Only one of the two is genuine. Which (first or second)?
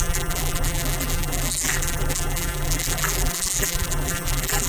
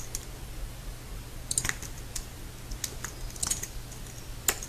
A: second